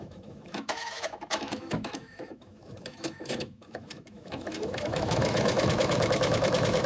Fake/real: fake